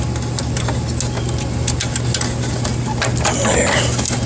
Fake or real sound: real